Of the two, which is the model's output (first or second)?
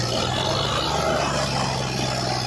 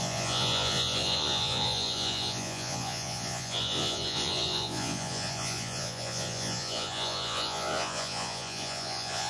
second